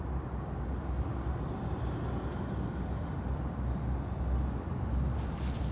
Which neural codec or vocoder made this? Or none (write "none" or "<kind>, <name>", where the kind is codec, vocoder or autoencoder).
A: none